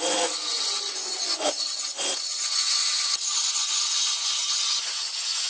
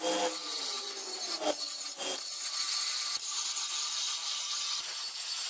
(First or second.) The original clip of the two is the second